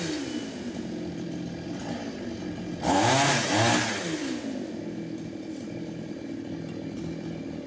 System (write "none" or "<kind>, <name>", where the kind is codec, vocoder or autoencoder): none